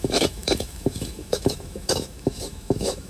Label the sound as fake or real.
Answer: fake